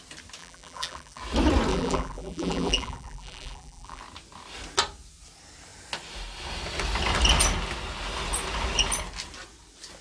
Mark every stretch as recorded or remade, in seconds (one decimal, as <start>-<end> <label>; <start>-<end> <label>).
0.0-0.4 recorded; 0.4-1.2 remade; 1.2-1.7 recorded; 1.7-4.0 remade; 4.0-10.0 recorded

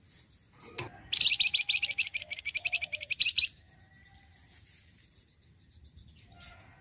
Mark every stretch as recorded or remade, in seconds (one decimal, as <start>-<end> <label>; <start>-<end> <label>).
0.0-3.2 recorded; 3.2-6.0 remade; 6.0-6.8 recorded

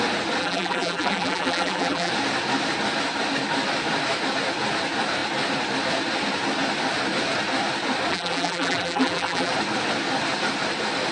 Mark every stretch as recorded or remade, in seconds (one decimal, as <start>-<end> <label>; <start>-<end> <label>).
0.0-0.4 recorded; 0.4-2.1 remade; 2.1-8.1 recorded; 8.1-9.5 remade; 9.5-11.1 recorded